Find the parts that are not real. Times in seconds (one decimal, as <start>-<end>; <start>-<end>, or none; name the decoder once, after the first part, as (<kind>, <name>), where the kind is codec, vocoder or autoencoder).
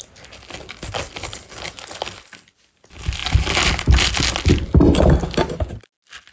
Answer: none